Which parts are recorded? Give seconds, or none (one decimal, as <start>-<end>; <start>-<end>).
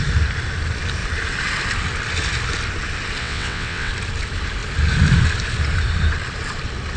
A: 0.0-3.2; 3.9-7.0